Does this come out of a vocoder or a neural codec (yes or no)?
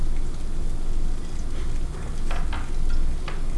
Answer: no